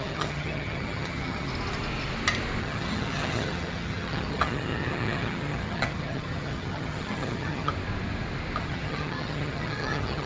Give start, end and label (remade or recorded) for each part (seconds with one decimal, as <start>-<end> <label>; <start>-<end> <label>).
0.0-1.5 remade; 1.5-2.6 recorded; 2.6-7.7 remade; 7.7-8.6 recorded; 8.6-10.3 remade